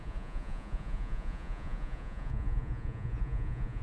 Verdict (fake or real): fake